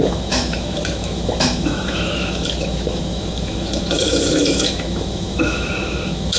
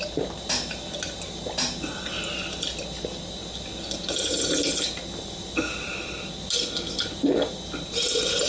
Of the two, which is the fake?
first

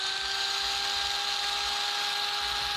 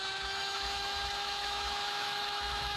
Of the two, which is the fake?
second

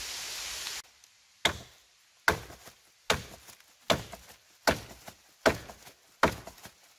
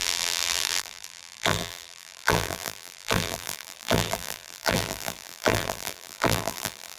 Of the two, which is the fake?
second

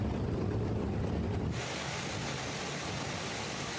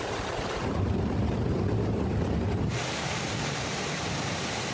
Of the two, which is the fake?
second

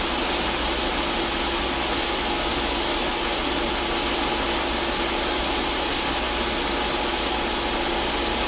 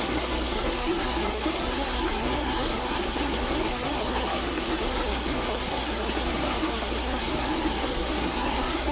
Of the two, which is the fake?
second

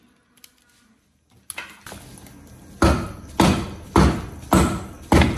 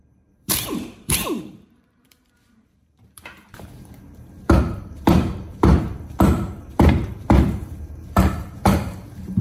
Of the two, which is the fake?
second